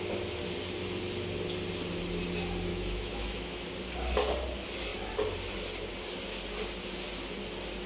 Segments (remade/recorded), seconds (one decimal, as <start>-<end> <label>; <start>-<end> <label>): 0.0-2.7 recorded; 2.7-3.7 remade; 3.7-7.9 recorded

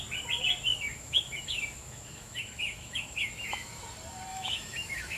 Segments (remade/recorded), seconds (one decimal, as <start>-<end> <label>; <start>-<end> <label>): 0.0-0.7 recorded; 0.7-3.8 remade; 3.8-4.3 recorded; 4.3-5.2 remade